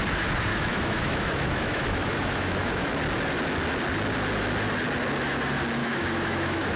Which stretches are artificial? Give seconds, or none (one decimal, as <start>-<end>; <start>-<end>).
0.5-2.9; 5.8-6.8